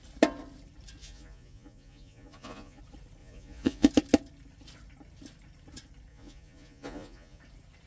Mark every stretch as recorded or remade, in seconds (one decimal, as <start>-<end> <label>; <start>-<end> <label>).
0.0-1.0 recorded; 1.0-2.8 remade; 2.8-3.2 recorded; 3.2-3.9 remade; 3.9-6.1 recorded; 6.1-7.4 remade; 7.4-7.9 recorded